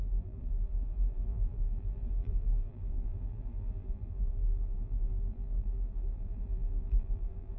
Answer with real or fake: fake